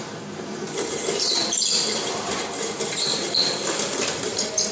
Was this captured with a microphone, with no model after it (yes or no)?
no